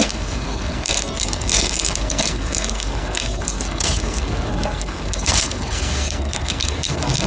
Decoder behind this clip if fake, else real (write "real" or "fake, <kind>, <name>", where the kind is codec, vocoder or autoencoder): fake, codec, SNAC